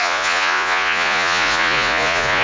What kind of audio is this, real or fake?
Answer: fake